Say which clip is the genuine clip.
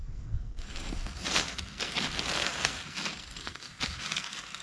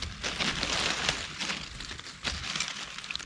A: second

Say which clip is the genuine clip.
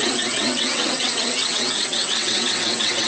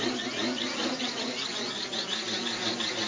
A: second